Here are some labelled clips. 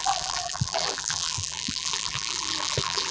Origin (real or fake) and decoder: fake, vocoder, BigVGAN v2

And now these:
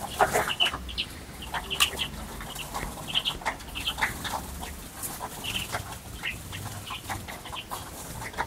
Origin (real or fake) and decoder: real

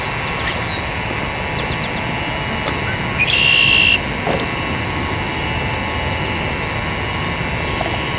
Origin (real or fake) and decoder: real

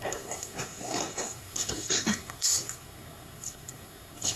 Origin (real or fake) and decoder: fake, codec, SNAC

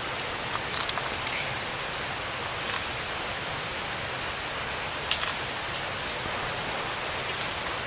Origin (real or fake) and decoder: real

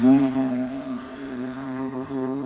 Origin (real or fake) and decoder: fake, codec, ZipCodec